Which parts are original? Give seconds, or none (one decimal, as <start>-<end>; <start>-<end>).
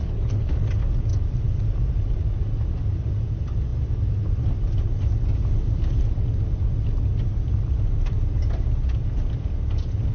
0.7-10.1